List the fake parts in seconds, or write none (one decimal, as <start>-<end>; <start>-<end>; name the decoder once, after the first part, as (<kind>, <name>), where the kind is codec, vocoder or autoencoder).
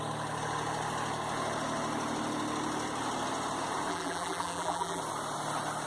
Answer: 3.9-5.0 (vocoder, BigVGAN v2)